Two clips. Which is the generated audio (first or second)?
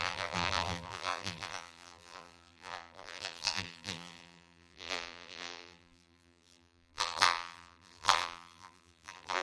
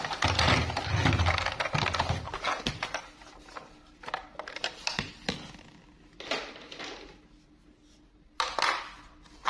first